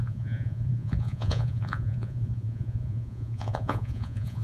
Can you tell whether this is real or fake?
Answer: fake